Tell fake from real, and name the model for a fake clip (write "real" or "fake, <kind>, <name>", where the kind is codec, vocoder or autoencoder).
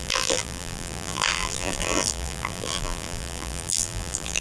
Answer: fake, vocoder, BigVGAN v2